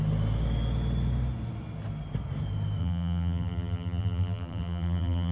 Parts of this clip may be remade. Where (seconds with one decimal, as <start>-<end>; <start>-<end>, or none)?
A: 2.8-5.3